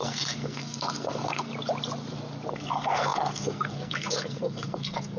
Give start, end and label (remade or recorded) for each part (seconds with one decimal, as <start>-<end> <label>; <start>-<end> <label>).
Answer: 0.0-1.5 remade; 1.5-2.5 recorded; 2.5-5.2 remade

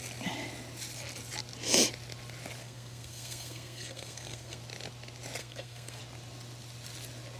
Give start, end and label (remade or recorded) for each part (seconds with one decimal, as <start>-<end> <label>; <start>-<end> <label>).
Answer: 0.0-2.6 recorded; 2.6-4.6 remade; 4.6-5.4 recorded; 5.4-6.0 remade; 6.0-7.4 recorded